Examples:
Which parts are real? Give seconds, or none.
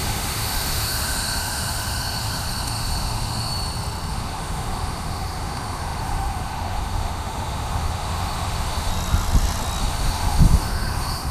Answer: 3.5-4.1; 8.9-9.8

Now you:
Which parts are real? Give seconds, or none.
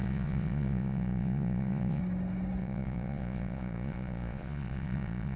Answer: 2.0-2.6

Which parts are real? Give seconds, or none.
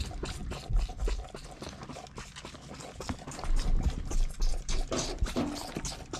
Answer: 0.0-4.5; 5.4-6.2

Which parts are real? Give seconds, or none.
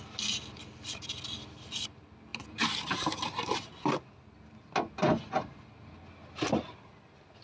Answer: 0.0-7.4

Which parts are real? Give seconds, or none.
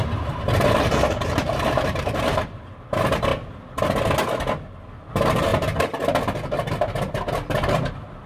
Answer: 3.3-5.1; 5.5-8.3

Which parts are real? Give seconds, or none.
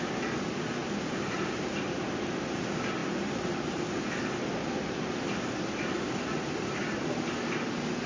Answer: 0.0-3.0; 6.9-8.1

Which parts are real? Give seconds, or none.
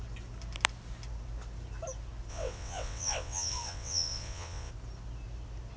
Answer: 0.0-2.3; 4.7-5.8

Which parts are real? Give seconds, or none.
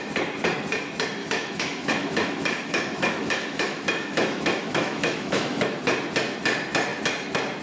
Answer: 0.0-1.2; 5.8-7.6